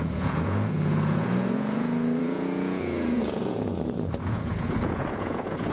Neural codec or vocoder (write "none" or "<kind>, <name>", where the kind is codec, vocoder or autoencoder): vocoder, Vocos